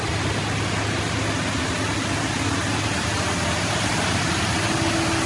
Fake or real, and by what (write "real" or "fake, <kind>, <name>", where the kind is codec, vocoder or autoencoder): real